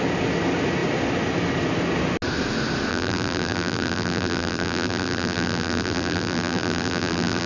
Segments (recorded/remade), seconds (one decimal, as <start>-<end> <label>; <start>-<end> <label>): 0.0-2.9 recorded; 2.9-7.5 remade